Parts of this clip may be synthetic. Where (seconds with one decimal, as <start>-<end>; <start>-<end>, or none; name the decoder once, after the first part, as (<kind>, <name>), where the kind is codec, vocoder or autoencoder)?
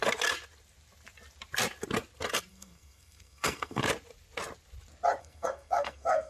2.5-3.8 (codec, SNAC); 5.2-6.3